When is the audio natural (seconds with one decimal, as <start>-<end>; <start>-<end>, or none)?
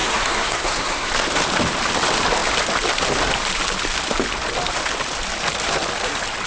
1.1-6.5